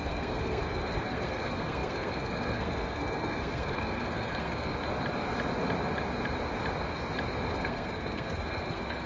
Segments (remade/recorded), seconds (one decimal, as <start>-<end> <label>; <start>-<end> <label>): 0.0-4.7 remade; 4.7-7.5 recorded; 7.5-9.1 remade